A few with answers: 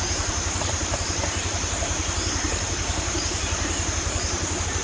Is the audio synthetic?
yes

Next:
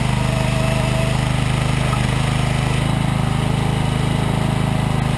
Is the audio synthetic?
no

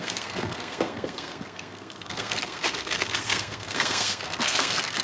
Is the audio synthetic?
yes